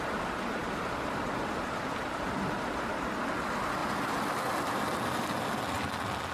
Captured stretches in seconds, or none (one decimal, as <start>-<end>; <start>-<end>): 0.0-0.6; 2.0-3.8; 4.4-6.3